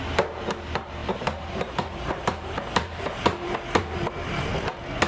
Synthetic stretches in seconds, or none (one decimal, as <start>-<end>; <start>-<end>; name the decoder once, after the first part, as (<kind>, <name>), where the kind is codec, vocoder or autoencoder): 1.0-4.1 (vocoder, BigVGAN v2)